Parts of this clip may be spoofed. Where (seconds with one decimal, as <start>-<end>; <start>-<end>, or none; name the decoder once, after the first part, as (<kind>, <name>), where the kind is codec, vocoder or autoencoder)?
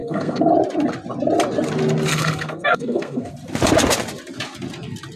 0.0-0.5 (codec, SNAC); 2.1-3.3